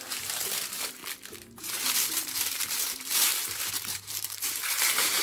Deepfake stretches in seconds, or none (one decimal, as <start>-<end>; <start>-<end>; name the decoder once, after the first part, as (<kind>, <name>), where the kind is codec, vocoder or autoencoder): 0.0-1.0 (vocoder, BigVGAN v2); 1.6-5.2